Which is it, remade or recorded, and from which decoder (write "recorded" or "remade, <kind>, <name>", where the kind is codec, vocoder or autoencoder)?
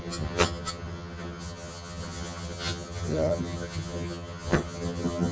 remade, vocoder, HiFi-GAN